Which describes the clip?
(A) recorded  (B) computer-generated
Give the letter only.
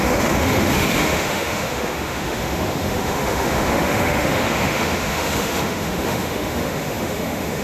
B